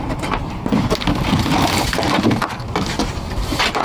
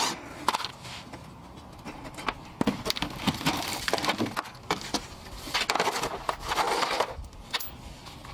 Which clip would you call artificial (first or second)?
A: first